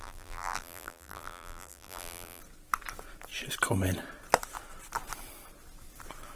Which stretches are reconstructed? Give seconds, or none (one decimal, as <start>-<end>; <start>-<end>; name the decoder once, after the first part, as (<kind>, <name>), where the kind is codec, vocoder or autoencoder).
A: 0.0-2.4 (vocoder, BigVGAN v2)